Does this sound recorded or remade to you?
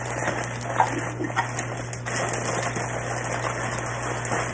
recorded